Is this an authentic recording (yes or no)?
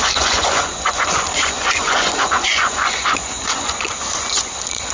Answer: no